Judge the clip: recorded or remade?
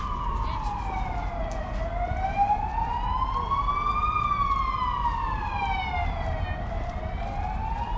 recorded